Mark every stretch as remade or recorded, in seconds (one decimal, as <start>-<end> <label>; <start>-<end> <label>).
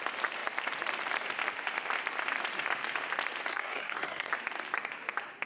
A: 0.0-3.5 recorded; 3.5-4.3 remade; 4.3-5.5 recorded